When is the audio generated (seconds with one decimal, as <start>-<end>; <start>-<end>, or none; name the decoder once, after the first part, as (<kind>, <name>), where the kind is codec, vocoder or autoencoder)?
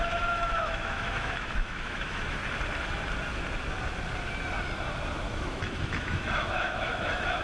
0.0-2.4 (autoencoder, DAC-VAE); 5.3-7.4